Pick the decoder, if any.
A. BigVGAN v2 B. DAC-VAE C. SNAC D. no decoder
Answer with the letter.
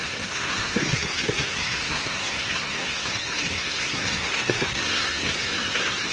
C